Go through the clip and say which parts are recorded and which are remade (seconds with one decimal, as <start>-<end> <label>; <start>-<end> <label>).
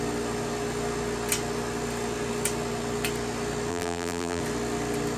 0.0-3.7 recorded; 3.7-4.4 remade; 4.4-5.2 recorded